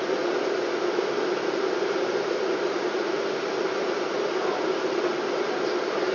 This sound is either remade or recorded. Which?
remade